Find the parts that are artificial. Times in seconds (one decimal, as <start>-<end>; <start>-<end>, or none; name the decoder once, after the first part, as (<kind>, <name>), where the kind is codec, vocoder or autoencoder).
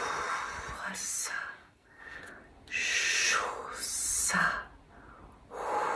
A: 1.6-2.2 (codec, SNAC)